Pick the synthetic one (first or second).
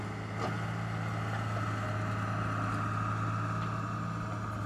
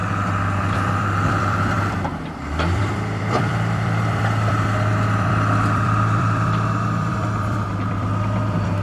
second